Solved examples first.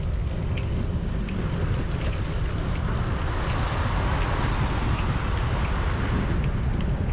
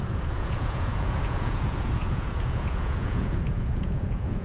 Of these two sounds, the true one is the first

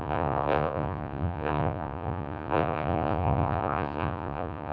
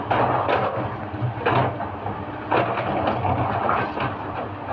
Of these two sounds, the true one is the second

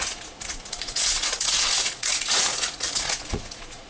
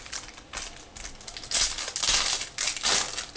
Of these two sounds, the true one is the second